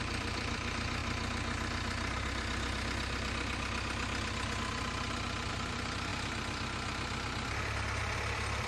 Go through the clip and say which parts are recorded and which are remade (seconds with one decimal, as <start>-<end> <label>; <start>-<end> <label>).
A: 0.0-1.0 remade; 1.0-5.5 recorded; 5.5-6.1 remade; 6.1-8.0 recorded; 8.0-8.7 remade